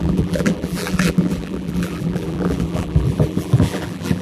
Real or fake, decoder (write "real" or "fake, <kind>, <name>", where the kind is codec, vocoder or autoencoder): fake, vocoder, BigVGAN v2